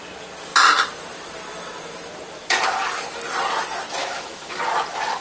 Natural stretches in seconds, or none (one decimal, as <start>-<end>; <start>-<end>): 0.0-4.0; 4.6-5.2